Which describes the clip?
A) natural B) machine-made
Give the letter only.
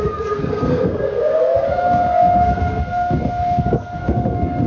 B